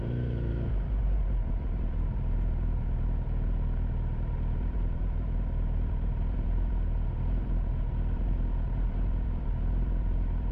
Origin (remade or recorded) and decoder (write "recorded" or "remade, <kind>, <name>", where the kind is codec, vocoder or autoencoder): remade, vocoder, BigVGAN v2